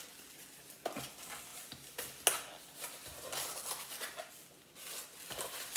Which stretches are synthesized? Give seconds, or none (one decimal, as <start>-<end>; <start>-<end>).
none